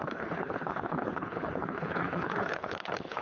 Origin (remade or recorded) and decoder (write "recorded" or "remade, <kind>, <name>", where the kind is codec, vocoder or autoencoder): remade, codec, HILCodec